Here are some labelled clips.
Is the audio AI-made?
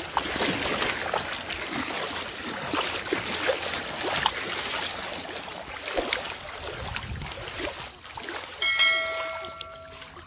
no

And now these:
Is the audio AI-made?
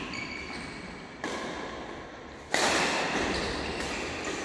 no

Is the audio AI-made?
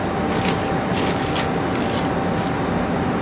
no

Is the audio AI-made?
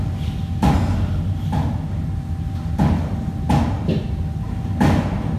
no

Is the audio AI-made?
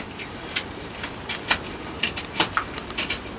yes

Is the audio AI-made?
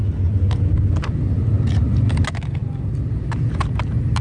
no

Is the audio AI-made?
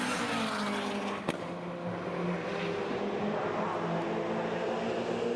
no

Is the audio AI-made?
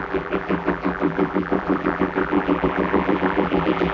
yes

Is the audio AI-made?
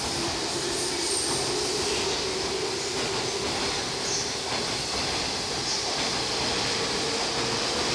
no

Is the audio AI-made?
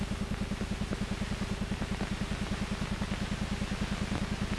no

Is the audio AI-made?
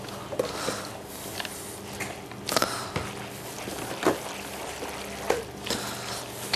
no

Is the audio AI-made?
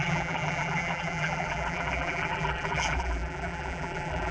yes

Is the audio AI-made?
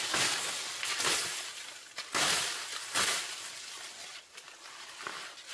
no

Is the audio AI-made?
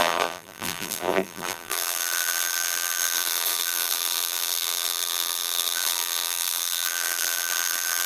yes